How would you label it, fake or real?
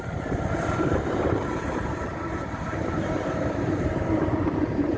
fake